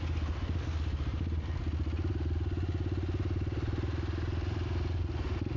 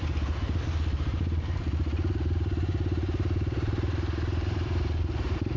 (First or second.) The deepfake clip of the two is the second